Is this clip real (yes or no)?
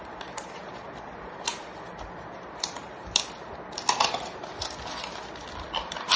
yes